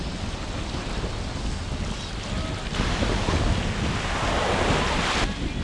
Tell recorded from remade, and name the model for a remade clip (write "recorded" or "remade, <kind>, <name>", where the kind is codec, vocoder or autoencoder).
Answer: recorded